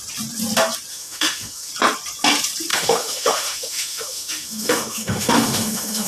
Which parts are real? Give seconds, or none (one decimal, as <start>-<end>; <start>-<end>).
0.0-0.9; 1.7-2.7